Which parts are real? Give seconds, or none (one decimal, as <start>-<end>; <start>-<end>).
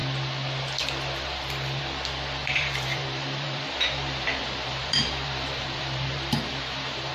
0.0-2.4